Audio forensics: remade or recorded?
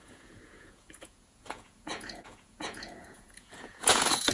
remade